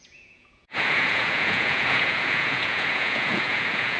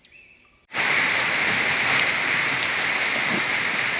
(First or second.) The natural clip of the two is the second